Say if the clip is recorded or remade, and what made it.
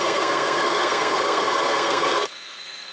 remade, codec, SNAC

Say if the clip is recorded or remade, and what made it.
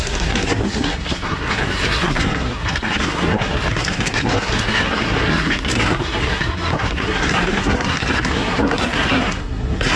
remade, codec, SNAC